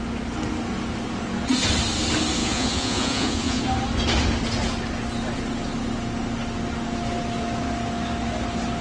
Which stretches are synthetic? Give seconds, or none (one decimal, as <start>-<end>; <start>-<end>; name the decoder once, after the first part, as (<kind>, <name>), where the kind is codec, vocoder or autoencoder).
2.4-3.6 (vocoder, Vocos)